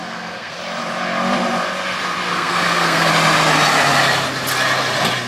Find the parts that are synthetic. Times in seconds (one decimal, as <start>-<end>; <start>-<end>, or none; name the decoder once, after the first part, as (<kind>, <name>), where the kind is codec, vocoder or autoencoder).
0.0-0.6 (codec, SNAC); 2.3-3.1